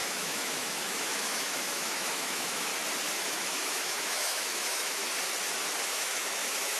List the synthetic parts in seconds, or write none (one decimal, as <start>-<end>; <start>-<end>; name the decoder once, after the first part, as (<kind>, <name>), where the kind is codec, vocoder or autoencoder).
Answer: 0.0-2.7 (autoencoder, DAC-VAE); 3.3-5.0; 5.8-6.8